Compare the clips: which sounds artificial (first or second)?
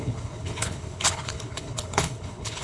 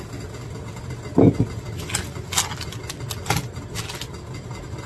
first